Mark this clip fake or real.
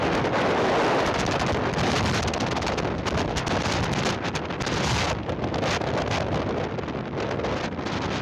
real